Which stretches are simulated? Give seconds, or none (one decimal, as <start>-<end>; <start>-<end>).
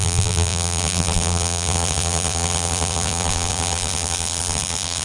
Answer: 0.0-5.0